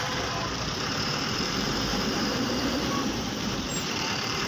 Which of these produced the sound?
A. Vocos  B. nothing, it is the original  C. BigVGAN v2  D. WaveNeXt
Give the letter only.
C